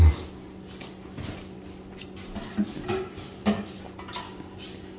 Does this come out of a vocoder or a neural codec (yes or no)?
no